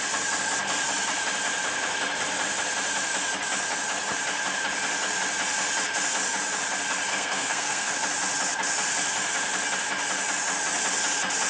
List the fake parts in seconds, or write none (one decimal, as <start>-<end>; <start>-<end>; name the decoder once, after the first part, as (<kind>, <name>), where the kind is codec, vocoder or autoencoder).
7.1-7.9 (codec, SNAC)